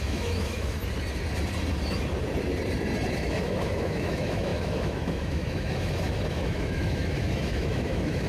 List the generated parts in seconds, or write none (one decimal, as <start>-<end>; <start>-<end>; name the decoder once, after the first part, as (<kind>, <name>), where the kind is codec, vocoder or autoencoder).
0.0-0.8 (autoencoder, DAC-VAE); 3.1-8.3